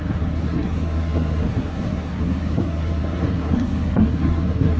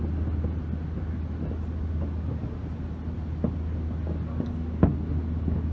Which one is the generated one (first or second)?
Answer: first